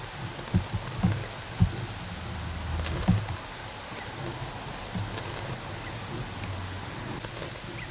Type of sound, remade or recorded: recorded